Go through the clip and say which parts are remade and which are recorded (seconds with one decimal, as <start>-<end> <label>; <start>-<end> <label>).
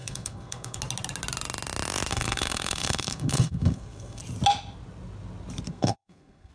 0.0-0.8 remade; 0.8-2.1 recorded; 2.1-4.2 remade; 4.2-5.7 recorded; 5.7-6.5 remade